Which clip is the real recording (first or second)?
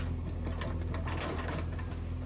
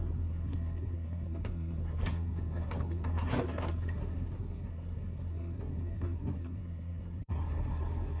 first